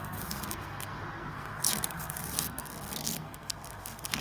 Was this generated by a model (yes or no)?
yes